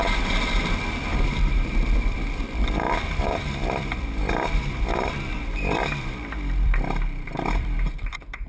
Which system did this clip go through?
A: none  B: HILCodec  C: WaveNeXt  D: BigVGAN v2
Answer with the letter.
D